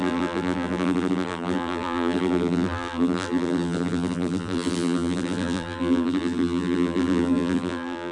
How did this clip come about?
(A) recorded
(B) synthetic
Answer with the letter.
B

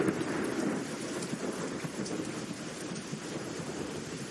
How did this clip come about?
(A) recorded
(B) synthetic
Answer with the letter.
B